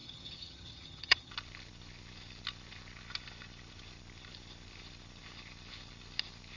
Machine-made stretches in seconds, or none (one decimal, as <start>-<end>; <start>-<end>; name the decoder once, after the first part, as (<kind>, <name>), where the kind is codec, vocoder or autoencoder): 0.0-1.3 (vocoder, HiFi-GAN)